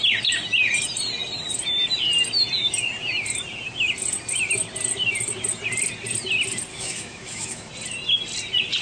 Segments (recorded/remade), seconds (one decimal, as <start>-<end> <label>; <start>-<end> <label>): 0.0-6.7 recorded; 6.7-7.7 remade; 7.7-8.8 recorded

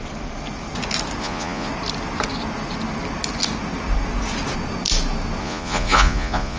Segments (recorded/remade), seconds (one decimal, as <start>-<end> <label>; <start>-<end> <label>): 0.0-1.2 recorded; 1.2-1.7 remade; 1.7-5.4 recorded; 5.4-6.6 remade

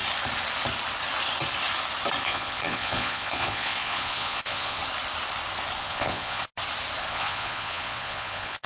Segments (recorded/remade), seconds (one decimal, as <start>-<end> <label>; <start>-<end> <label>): 0.0-2.2 recorded; 2.2-4.8 remade; 4.8-5.8 recorded; 5.8-6.5 remade; 6.5-7.1 recorded; 7.1-8.7 remade

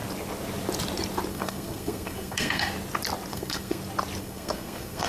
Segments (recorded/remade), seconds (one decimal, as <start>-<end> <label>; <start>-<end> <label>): 0.0-1.3 recorded; 1.3-2.7 remade; 2.7-3.3 recorded; 3.3-3.8 remade; 3.8-4.2 recorded; 4.2-5.1 remade